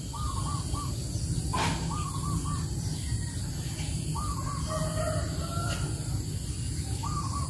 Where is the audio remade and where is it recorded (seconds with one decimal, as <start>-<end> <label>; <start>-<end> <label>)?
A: 0.0-7.5 recorded